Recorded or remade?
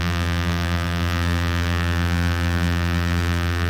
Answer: remade